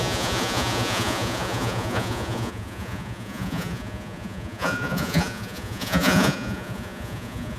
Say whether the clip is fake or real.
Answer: fake